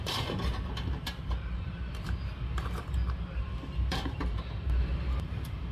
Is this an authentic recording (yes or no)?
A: no